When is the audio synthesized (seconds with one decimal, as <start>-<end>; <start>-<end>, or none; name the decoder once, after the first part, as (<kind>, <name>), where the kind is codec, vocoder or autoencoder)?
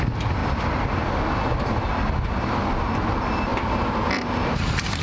none